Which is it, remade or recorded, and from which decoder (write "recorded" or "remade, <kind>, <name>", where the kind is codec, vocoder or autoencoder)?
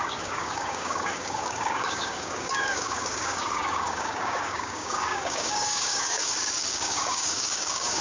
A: remade, codec, DAC